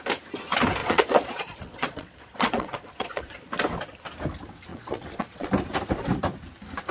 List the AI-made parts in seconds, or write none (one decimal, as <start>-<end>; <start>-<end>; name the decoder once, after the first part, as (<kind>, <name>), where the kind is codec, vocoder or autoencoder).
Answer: 0.8-3.2 (vocoder, Vocos); 4.7-5.5